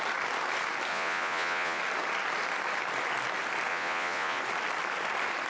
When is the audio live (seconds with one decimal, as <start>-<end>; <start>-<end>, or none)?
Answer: 0.0-0.9; 1.8-3.7; 4.4-5.5